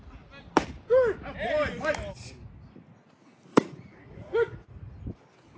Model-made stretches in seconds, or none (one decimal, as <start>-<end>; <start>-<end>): 3.5-5.0

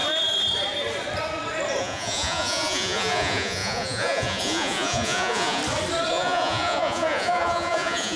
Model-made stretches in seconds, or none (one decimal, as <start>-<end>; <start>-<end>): 1.8-5.6; 6.1-8.2